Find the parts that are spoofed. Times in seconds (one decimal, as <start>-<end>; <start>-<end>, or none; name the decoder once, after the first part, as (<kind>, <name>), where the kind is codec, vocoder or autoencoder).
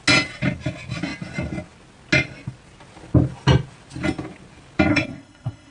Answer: 4.9-5.7 (codec, SNAC)